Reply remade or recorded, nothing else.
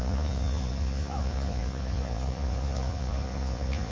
remade